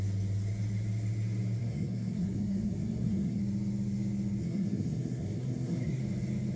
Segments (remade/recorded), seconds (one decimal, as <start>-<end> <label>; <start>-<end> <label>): 0.0-1.6 recorded; 1.6-3.4 remade; 3.4-4.4 recorded; 4.4-6.0 remade; 6.0-6.6 recorded